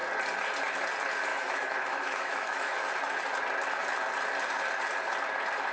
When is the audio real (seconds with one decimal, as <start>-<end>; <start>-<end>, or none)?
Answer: 0.0-1.3; 2.9-5.7